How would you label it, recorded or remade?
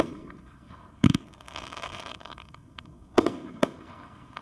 remade